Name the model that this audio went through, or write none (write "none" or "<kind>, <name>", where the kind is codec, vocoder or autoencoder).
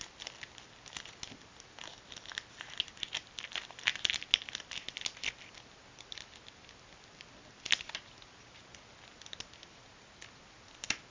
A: none